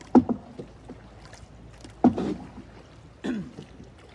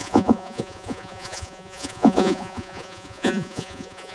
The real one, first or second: first